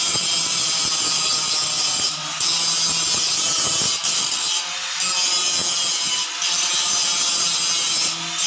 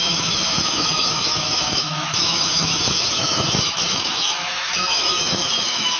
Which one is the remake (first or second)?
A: second